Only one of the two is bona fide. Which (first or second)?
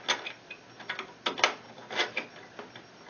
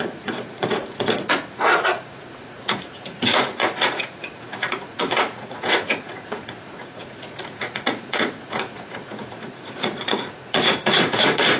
first